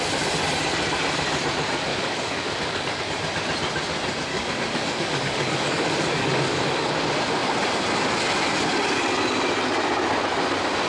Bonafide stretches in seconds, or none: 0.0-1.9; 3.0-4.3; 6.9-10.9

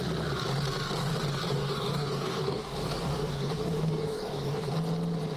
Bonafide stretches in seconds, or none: 0.0-1.5; 4.7-5.4

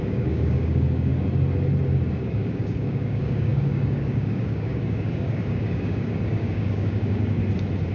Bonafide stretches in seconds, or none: 1.1-2.1; 7.4-7.9

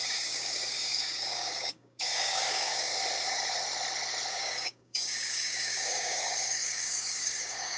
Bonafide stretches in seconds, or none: 2.9-4.3

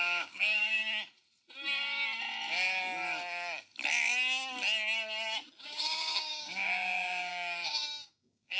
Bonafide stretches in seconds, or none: 0.8-5.6